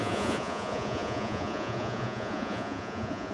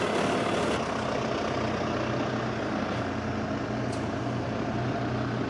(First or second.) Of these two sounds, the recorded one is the second